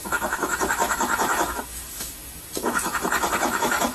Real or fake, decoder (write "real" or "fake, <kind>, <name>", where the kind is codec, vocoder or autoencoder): fake, autoencoder, DAC-VAE